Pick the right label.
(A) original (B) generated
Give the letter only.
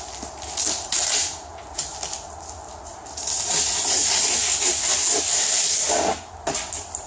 A